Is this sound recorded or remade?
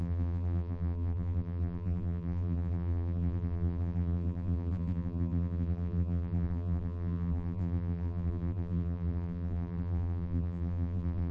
remade